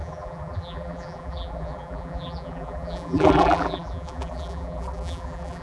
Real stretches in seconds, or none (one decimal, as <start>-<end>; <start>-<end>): none